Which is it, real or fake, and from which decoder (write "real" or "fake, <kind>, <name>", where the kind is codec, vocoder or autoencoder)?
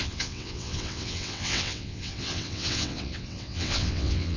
fake, vocoder, WaveNeXt